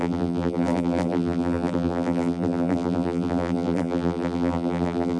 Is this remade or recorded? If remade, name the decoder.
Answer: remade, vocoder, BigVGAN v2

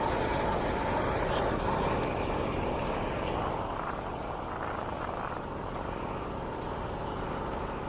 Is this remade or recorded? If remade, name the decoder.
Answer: recorded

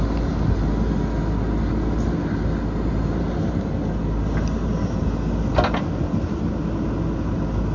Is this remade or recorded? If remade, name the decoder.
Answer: recorded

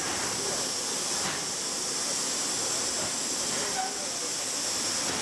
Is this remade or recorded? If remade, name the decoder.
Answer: recorded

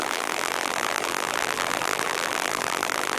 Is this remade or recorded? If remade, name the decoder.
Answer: remade, vocoder, BigVGAN v2